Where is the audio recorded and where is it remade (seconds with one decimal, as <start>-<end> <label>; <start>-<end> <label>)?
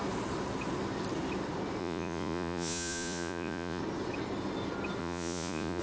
0.0-1.8 recorded; 1.8-3.8 remade; 3.8-5.0 recorded; 5.0-5.8 remade